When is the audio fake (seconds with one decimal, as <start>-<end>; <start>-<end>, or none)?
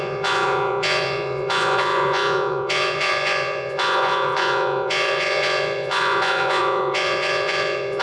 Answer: 0.0-8.0